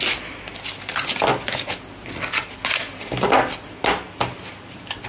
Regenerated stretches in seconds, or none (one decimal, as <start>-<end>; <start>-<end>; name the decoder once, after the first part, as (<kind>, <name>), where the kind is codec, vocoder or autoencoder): none